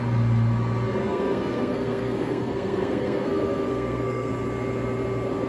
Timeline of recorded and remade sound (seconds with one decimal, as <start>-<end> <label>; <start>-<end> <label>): 0.0-1.0 recorded; 1.0-4.3 remade; 4.3-5.5 recorded